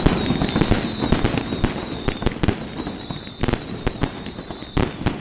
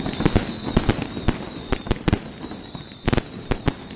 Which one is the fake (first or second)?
second